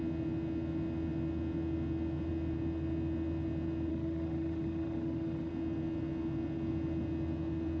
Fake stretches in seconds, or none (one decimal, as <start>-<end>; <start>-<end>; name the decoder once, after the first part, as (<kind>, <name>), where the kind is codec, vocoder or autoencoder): 3.9-5.5 (autoencoder, DAC-VAE)